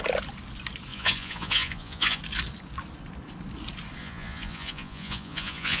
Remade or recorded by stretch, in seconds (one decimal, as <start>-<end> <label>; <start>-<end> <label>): 0.0-0.9 recorded; 0.9-2.2 remade; 2.2-4.0 recorded; 4.0-5.8 remade